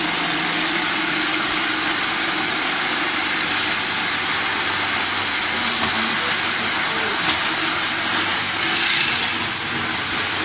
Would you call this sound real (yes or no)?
yes